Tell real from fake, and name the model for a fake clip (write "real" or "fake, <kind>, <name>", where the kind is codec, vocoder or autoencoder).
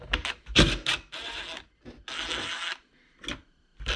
real